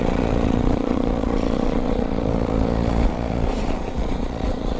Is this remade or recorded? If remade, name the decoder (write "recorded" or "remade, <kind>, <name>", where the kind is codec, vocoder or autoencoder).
remade, vocoder, Vocos